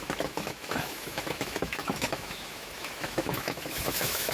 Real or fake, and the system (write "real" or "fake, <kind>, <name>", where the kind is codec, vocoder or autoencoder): fake, autoencoder, DAC-VAE